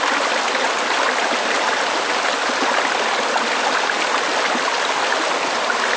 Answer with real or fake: real